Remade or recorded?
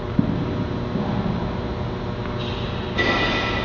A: recorded